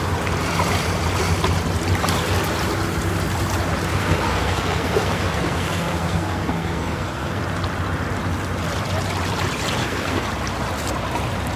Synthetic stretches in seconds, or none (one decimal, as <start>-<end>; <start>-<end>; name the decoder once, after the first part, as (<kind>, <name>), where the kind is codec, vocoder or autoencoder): 3.9-7.4 (codec, SNAC); 9.8-10.3